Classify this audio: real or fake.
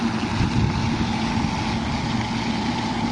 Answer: real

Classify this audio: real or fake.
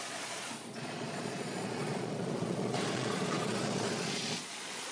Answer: fake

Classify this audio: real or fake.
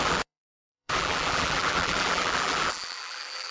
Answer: fake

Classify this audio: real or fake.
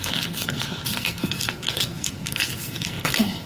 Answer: fake